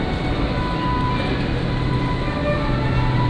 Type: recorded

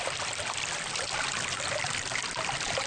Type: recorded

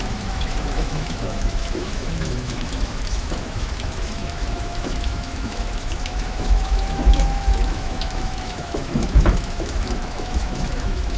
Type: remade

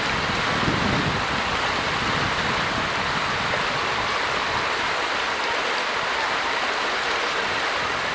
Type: recorded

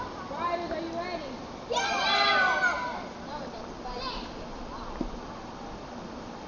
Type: recorded